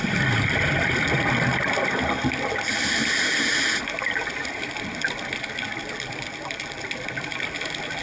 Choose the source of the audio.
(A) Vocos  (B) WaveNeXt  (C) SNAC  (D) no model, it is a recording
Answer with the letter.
D